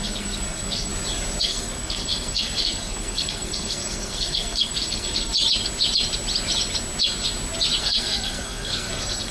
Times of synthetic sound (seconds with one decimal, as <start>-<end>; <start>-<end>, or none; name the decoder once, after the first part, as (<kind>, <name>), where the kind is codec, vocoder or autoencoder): 0.0-0.9 (codec, SNAC); 1.4-5.3; 7.8-9.3